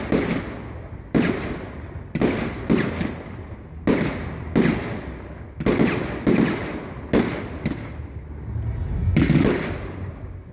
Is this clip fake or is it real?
real